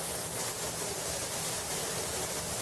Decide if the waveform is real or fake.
real